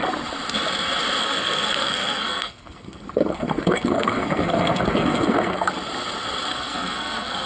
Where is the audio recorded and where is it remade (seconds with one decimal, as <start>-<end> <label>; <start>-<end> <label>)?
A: 0.0-1.2 recorded; 1.2-5.7 remade; 5.7-6.5 recorded; 6.5-7.5 remade